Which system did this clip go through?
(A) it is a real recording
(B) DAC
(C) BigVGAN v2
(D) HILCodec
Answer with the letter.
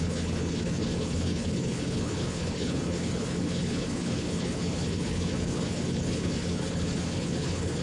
D